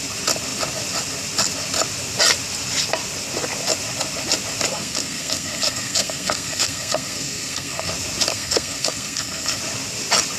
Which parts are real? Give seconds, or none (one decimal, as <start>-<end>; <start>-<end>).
0.0-4.7; 7.9-8.3; 9.6-10.4